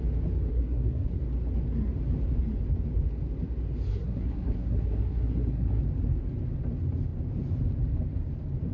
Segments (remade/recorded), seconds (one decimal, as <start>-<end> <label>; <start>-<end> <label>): 0.0-0.5 recorded; 0.5-1.2 remade; 1.2-3.9 recorded; 3.9-5.8 remade; 5.8-8.7 recorded